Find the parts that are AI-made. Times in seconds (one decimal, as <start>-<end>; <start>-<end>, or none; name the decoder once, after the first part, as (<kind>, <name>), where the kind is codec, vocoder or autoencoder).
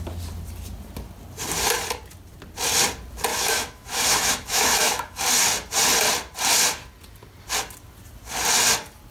3.3-5.2 (autoencoder, DAC-VAE)